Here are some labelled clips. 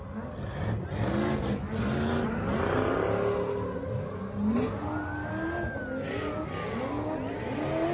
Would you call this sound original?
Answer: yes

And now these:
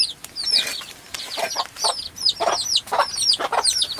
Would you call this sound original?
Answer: yes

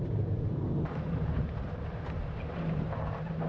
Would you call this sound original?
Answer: no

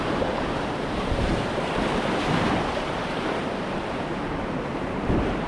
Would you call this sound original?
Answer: no